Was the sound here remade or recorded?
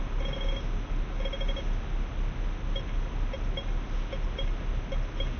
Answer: recorded